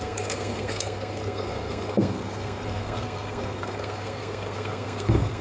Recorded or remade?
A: remade